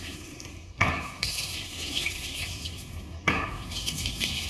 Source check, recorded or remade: remade